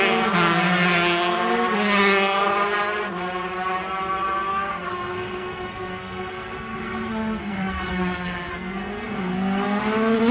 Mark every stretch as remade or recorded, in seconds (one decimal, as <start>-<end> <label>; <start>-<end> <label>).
0.0-4.5 recorded; 4.5-9.8 remade; 9.8-10.3 recorded